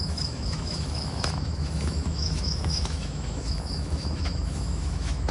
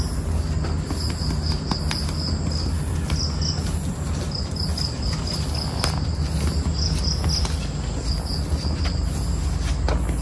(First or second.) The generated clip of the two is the first